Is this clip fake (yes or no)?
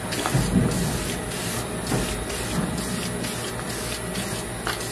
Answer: no